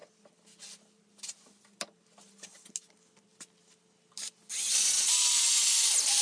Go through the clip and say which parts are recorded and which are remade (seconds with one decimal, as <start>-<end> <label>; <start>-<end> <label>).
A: 0.0-6.2 recorded